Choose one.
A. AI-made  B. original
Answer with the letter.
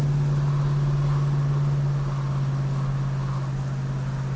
B